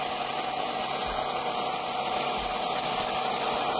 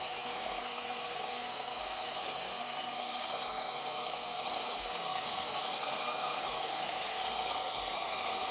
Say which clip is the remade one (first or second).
second